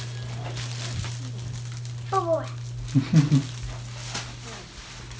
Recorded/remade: recorded